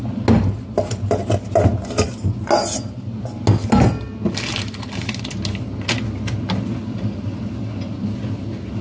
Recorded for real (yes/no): yes